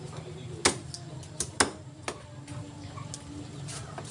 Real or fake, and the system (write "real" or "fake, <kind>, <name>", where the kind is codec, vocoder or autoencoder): real